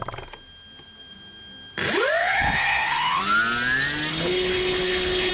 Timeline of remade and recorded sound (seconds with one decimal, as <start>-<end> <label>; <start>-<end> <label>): 0.0-2.2 recorded; 2.2-3.2 remade; 3.2-4.1 recorded; 4.1-5.3 remade